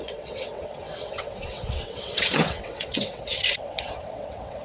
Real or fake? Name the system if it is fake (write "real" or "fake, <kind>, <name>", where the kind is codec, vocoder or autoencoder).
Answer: fake, vocoder, WaveNeXt